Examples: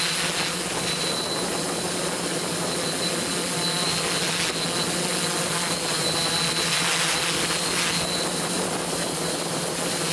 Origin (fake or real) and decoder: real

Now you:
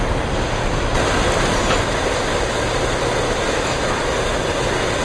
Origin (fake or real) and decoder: real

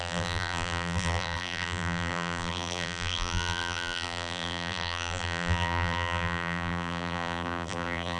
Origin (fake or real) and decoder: fake, vocoder, BigVGAN v2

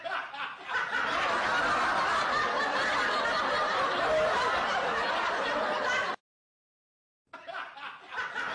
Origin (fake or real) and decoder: real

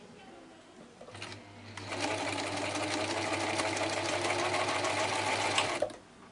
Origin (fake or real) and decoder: real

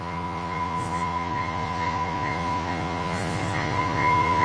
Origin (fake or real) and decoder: fake, vocoder, Vocos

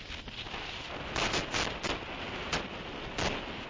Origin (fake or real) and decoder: real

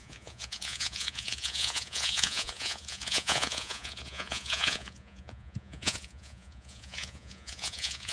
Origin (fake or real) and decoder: fake, vocoder, Vocos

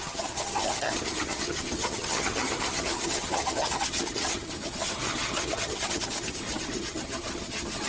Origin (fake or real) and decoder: fake, vocoder, HiFi-GAN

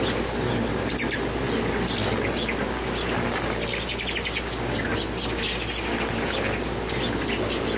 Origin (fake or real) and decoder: real